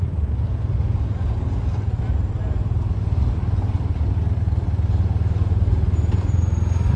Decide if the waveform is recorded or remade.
recorded